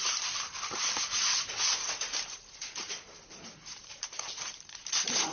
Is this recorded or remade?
remade